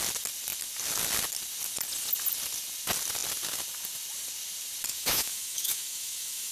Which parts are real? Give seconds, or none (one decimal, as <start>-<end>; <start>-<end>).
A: 0.0-4.9